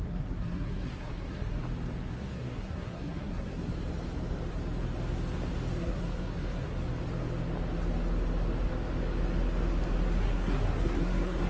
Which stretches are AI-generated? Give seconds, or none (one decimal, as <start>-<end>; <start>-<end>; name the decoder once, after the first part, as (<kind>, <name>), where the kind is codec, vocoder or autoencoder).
0.0-1.6 (codec, SNAC); 2.2-3.7; 5.8-6.8; 10.2-11.5